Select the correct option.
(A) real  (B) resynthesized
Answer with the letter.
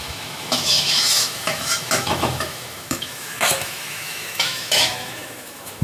B